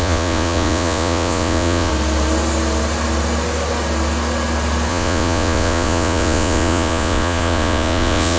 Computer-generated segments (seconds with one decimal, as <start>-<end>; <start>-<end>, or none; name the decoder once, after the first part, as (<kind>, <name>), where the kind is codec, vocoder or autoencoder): 0.0-1.9 (vocoder, Vocos); 4.9-8.4